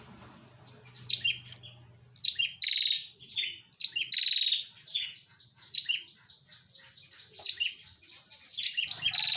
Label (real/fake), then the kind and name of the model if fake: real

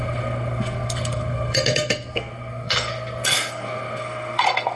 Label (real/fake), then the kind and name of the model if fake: fake, codec, SNAC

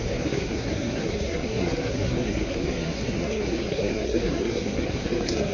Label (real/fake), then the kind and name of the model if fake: fake, codec, SNAC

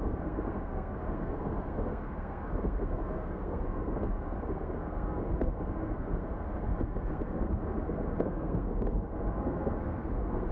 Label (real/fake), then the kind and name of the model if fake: fake, codec, SNAC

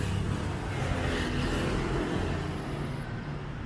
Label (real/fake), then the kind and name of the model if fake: real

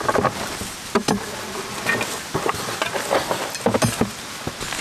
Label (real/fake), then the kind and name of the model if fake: real